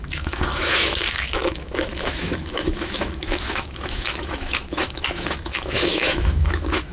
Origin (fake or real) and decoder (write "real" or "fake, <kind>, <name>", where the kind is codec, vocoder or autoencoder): fake, autoencoder, DAC-VAE